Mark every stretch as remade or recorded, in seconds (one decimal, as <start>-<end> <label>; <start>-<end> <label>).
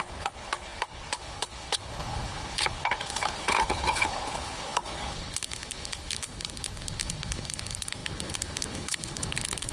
0.0-9.7 remade